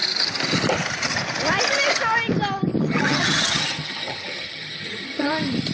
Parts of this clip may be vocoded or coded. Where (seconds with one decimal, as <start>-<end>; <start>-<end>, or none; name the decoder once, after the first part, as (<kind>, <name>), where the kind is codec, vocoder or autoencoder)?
2.8-5.3 (vocoder, HiFi-GAN)

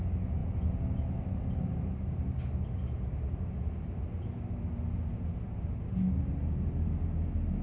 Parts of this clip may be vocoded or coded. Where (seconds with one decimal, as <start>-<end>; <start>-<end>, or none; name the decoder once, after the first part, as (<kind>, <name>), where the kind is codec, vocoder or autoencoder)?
none

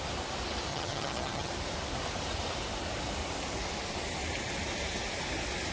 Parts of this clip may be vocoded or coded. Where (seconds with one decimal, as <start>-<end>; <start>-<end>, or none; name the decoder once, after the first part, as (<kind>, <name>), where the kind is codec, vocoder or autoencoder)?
0.7-1.5 (vocoder, HiFi-GAN)

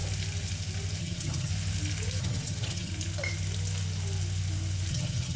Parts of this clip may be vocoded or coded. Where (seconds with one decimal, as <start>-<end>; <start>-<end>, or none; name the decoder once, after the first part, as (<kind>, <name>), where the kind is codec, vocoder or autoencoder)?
1.0-1.5 (vocoder, HiFi-GAN); 2.2-2.9; 4.9-5.4

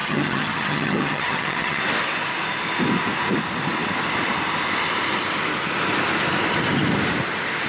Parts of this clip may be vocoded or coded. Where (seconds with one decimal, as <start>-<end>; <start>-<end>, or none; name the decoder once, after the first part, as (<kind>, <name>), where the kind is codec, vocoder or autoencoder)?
0.0-1.8 (vocoder, HiFi-GAN)